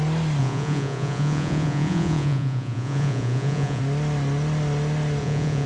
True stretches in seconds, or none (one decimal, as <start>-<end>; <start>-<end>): 0.0-0.4; 3.8-5.2